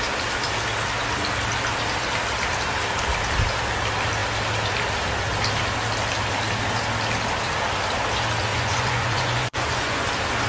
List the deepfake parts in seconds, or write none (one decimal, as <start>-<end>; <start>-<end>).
8.5-10.1